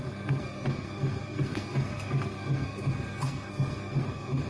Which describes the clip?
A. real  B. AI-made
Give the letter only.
B